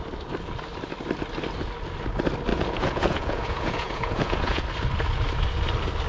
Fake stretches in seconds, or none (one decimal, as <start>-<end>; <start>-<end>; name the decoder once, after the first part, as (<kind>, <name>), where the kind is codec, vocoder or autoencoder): 2.5-4.6 (vocoder, Vocos)